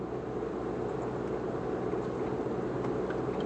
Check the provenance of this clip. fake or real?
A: real